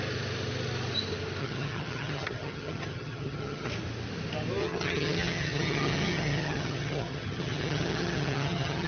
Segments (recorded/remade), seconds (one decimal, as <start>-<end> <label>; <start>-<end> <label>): 0.0-1.4 recorded; 1.4-3.7 remade; 3.7-4.6 recorded; 4.6-8.9 remade